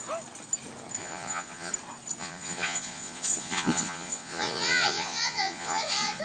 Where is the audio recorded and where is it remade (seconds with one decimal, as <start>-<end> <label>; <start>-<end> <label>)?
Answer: 0.0-1.0 recorded; 1.0-1.7 remade; 1.7-2.2 recorded; 2.2-6.2 remade